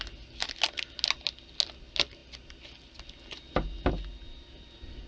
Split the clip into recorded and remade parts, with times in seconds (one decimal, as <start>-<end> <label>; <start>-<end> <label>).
0.0-5.1 recorded